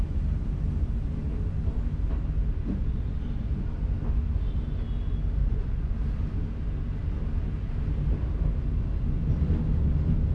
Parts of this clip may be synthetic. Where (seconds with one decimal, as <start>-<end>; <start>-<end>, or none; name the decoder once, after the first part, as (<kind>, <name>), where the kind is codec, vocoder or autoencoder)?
5.4-5.9 (vocoder, Vocos)